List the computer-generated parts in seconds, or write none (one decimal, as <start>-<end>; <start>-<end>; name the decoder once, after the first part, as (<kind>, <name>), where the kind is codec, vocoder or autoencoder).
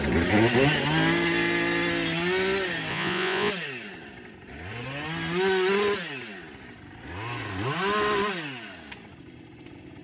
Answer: 2.9-3.5 (vocoder, Vocos)